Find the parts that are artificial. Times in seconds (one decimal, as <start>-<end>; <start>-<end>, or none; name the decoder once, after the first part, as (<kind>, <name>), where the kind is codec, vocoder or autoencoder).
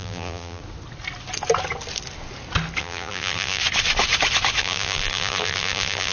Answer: 0.0-0.6 (vocoder, BigVGAN v2); 2.8-3.6; 4.6-6.1